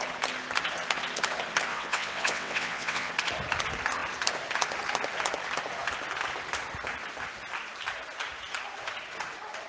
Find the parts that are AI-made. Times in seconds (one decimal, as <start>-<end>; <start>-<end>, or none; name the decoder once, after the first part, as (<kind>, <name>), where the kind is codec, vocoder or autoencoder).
1.7-3.1 (vocoder, WaveNeXt)